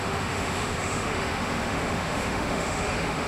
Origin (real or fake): fake